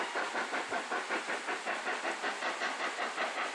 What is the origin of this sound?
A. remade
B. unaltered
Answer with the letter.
B